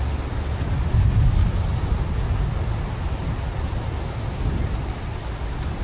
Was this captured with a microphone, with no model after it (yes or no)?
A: yes